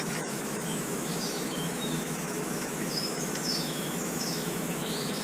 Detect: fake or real fake